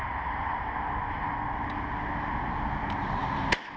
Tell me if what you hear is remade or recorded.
recorded